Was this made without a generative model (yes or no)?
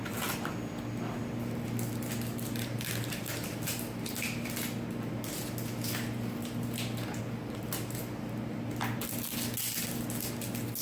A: yes